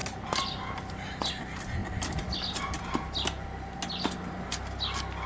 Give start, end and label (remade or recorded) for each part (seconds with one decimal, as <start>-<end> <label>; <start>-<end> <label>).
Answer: 0.0-5.3 recorded